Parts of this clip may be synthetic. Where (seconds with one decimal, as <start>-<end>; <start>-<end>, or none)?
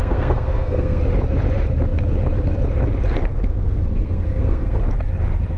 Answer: 0.0-1.0; 3.5-4.8